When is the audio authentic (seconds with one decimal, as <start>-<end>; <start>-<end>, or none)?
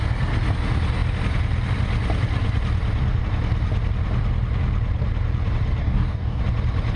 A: 0.0-5.8; 6.4-7.0